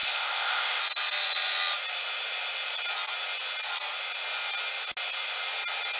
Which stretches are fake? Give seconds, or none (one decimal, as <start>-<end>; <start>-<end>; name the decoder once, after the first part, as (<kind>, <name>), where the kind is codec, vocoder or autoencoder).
0.0-0.8 (codec, ZipCodec)